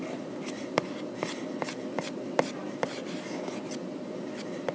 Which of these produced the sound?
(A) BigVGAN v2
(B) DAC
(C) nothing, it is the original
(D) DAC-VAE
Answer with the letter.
C